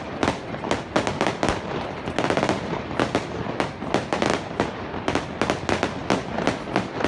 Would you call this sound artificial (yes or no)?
no